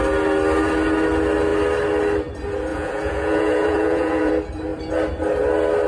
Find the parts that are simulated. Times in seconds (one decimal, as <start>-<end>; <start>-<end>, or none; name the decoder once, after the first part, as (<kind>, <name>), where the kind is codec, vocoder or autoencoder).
2.7-4.3 (vocoder, Vocos)